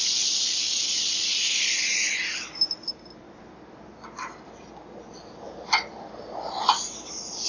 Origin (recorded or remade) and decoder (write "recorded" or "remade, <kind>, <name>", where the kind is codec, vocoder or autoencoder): recorded